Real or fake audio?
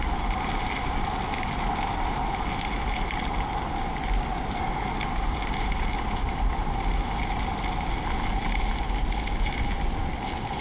real